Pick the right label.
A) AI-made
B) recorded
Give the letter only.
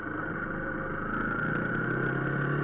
B